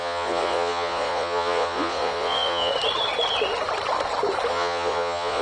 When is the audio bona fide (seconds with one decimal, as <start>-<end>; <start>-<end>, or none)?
2.7-4.5